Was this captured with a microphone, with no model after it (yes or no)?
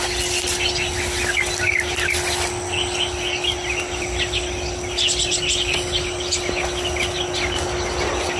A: yes